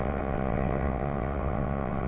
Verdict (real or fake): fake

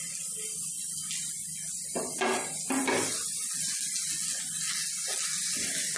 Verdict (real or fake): real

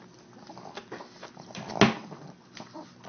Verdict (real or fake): real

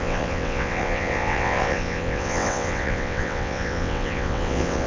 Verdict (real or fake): fake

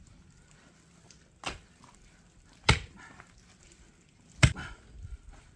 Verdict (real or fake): real